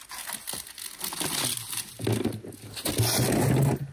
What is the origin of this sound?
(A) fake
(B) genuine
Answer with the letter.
B